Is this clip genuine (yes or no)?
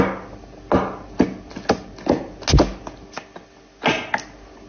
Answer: yes